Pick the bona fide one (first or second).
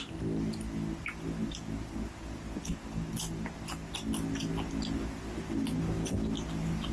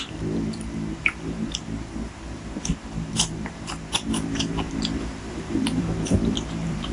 first